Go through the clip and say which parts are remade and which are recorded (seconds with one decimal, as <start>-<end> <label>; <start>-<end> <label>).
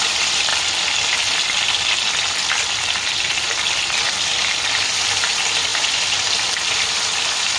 0.0-0.5 remade; 0.5-2.7 recorded; 2.7-7.6 remade